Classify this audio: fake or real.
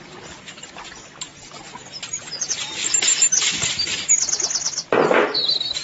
real